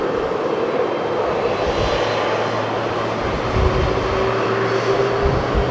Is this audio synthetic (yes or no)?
no